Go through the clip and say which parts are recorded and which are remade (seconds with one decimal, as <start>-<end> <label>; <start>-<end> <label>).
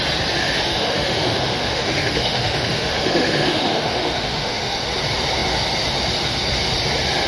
0.0-0.4 recorded; 0.4-4.8 remade; 4.8-7.3 recorded